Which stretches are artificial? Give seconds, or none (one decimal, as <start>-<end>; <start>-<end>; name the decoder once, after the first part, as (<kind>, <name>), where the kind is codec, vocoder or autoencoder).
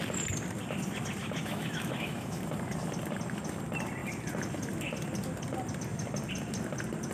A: 1.2-2.4 (autoencoder, DAC-VAE)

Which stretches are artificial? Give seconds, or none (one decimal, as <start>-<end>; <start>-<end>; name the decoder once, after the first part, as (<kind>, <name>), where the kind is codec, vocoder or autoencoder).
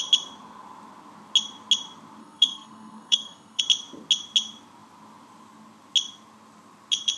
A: 2.2-3.6 (codec, SNAC)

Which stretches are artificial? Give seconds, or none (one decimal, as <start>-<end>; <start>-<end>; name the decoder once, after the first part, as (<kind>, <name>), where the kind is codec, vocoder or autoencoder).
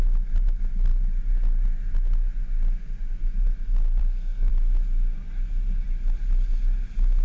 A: 4.0-4.5 (codec, SNAC)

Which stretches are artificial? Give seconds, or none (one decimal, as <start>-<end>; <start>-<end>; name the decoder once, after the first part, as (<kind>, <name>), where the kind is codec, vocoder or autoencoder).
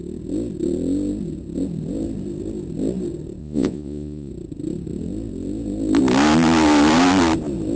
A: 3.4-4.3 (vocoder, Vocos)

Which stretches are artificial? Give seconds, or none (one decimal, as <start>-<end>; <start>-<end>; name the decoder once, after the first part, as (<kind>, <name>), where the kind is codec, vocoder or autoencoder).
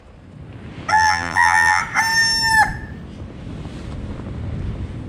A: 0.9-1.8 (vocoder, BigVGAN v2)